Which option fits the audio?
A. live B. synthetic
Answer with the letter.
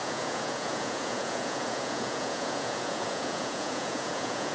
B